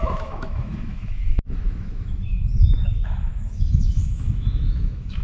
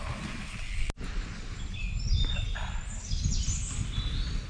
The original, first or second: second